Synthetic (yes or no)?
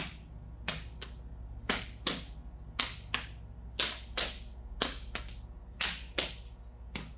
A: no